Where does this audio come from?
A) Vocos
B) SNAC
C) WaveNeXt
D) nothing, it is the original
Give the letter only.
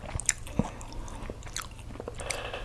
D